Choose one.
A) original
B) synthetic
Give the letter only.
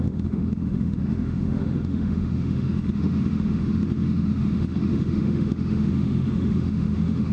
B